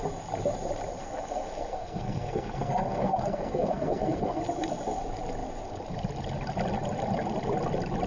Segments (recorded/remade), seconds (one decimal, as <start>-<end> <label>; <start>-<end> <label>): 0.0-1.0 recorded; 1.0-4.4 remade; 4.4-8.1 recorded